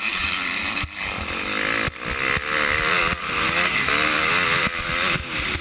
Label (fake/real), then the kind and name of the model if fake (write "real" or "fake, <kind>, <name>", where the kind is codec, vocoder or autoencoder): real